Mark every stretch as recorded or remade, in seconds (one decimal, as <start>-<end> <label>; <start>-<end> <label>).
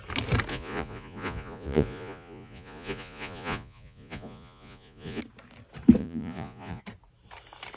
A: 0.0-0.5 recorded; 0.5-5.2 remade; 5.2-6.0 recorded; 6.0-6.8 remade; 6.8-7.8 recorded